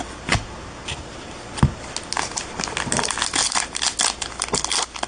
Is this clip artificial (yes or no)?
no